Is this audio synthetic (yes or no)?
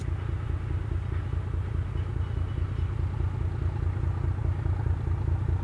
no